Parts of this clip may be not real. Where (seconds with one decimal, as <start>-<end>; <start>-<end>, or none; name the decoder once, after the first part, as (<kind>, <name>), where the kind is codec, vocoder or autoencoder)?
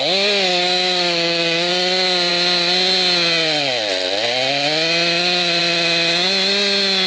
0.5-1.7 (autoencoder, DAC-VAE)